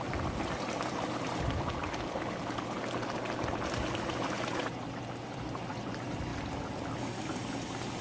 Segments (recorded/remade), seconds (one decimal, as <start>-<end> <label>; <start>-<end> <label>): 0.0-1.8 remade; 1.8-5.3 recorded; 5.3-8.0 remade